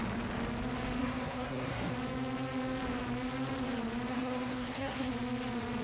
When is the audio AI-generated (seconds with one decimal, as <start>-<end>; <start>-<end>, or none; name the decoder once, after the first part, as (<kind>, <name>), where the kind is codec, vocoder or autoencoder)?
1.0-1.9 (codec, SNAC); 4.1-5.1